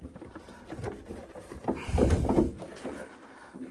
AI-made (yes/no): yes